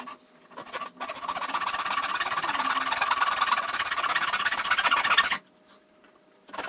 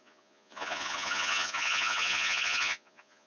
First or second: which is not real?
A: second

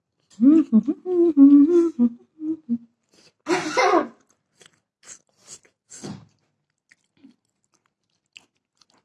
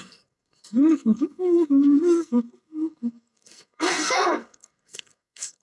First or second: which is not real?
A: second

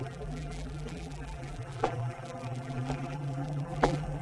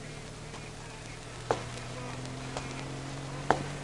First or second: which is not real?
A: first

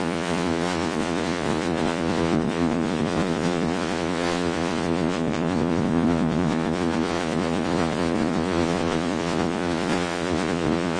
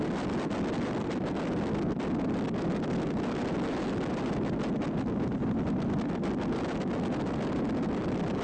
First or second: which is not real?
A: first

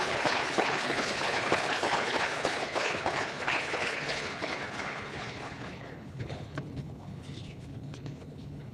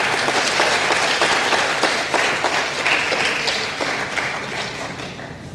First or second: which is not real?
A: first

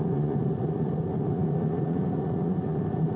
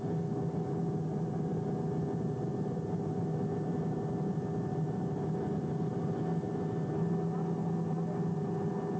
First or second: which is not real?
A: first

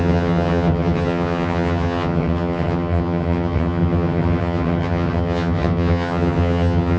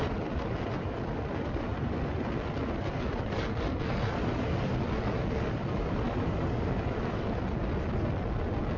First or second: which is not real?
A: first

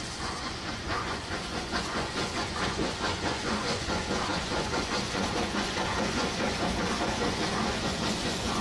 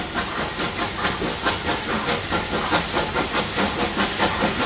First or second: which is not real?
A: first